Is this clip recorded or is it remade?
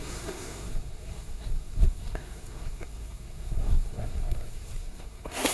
remade